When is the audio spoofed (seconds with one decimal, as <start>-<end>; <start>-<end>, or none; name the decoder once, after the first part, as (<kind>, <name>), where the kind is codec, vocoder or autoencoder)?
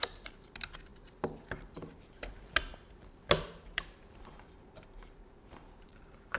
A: 0.0-2.7 (vocoder, BigVGAN v2); 3.4-6.4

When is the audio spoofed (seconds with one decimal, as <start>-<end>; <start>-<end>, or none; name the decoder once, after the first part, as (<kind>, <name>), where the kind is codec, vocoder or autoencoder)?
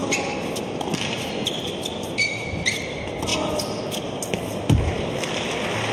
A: none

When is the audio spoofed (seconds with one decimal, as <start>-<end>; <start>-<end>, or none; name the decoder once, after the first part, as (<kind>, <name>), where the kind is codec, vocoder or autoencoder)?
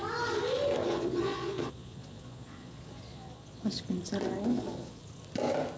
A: 0.8-3.8 (vocoder, Vocos); 4.5-5.0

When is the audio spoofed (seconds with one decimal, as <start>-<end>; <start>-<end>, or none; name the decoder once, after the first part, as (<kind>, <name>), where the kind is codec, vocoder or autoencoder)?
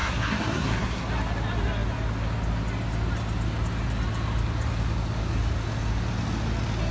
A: 0.0-1.1 (codec, SNAC)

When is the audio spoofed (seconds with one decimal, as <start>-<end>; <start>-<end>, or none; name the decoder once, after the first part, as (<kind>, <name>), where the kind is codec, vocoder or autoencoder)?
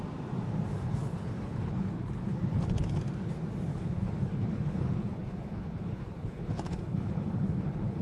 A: 0.7-3.0 (codec, HILCodec); 3.7-8.0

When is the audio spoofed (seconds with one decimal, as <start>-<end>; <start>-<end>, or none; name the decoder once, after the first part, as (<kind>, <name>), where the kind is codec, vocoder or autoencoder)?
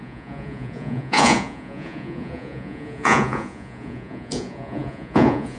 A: 0.0-5.6 (vocoder, Vocos)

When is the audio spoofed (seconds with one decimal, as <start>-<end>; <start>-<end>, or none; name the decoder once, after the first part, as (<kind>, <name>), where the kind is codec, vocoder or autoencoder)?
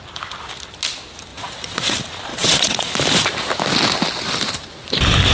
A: 1.3-1.9 (vocoder, WaveNeXt); 2.3-2.9